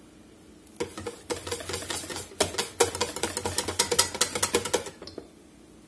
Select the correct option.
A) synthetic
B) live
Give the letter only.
B